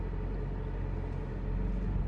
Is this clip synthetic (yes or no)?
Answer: no